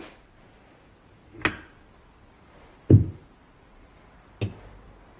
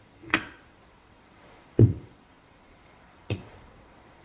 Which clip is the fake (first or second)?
second